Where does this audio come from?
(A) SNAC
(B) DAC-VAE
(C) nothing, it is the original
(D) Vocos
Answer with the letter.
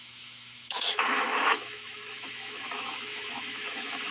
B